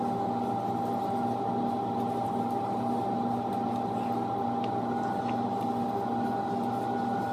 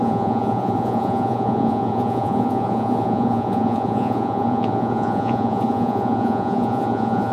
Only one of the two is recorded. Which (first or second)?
first